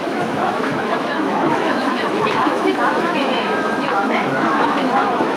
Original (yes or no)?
no